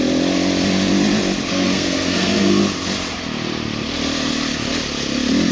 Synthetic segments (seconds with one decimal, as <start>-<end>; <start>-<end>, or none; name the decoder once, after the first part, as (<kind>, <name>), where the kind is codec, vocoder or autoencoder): 1.5-2.6 (codec, SNAC)